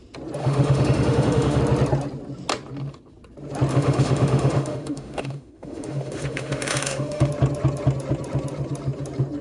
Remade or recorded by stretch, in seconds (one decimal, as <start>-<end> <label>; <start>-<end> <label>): 0.0-0.4 recorded; 0.4-1.6 remade; 1.6-3.7 recorded; 3.7-7.3 remade; 7.3-9.4 recorded